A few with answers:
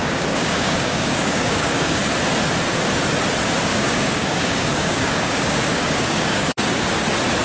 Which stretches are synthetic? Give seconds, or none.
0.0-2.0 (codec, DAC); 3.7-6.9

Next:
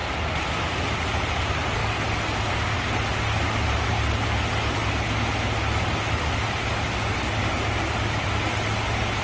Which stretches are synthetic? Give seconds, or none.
none

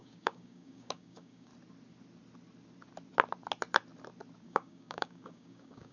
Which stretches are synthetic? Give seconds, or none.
0.0-1.5 (codec, DAC); 4.4-5.9